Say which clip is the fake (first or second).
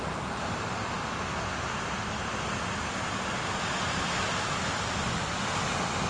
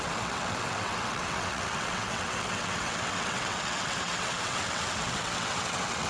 second